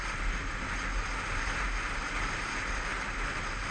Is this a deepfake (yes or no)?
no